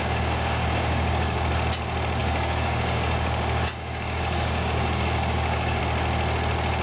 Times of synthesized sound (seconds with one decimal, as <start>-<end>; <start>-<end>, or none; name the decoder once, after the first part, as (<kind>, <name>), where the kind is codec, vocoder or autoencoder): 0.0-1.5 (codec, DAC); 2.2-5.8